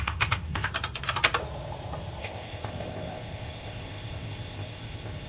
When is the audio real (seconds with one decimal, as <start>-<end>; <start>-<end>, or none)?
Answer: 0.7-2.2